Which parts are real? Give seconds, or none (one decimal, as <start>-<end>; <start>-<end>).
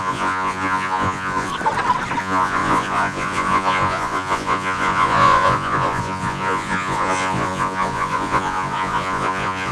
1.5-2.2